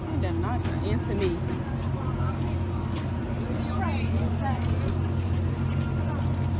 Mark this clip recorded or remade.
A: recorded